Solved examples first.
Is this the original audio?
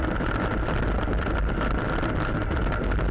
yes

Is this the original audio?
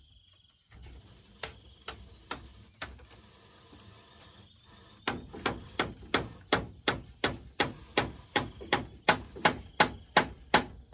yes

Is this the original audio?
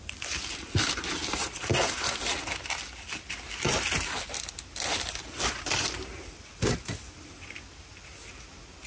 yes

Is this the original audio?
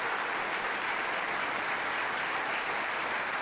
yes